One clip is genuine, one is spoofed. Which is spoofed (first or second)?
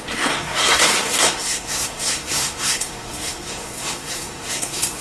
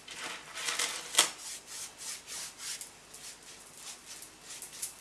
first